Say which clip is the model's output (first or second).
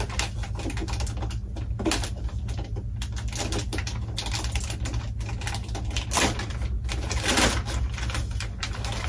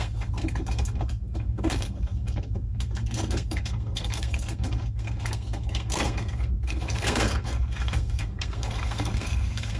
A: second